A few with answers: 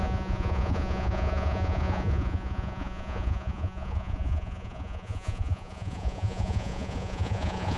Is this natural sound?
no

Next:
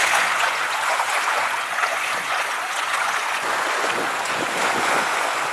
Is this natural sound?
no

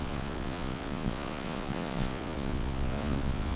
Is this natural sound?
no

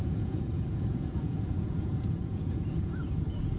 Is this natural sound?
no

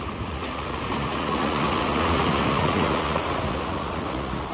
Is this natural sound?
no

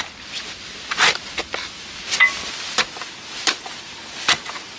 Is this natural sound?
yes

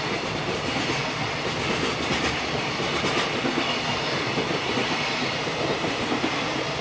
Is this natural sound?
yes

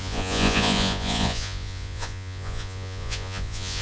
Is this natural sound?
no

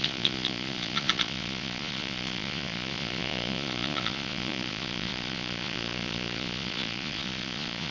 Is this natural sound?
no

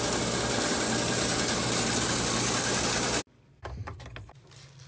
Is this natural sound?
yes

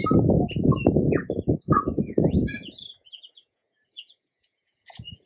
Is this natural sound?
no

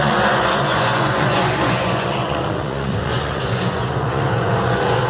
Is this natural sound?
no